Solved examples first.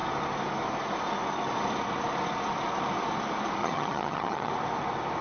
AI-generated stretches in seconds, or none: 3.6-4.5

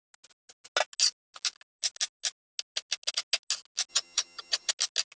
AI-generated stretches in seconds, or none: 3.9-4.7